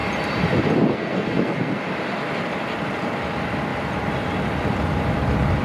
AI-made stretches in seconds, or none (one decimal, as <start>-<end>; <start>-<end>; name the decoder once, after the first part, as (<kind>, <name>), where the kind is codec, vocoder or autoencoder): 0.9-1.8 (codec, SNAC)